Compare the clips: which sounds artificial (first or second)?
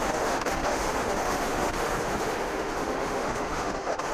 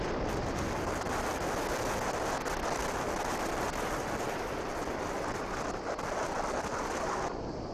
first